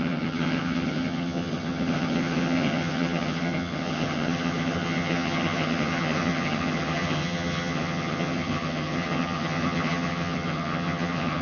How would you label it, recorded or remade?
remade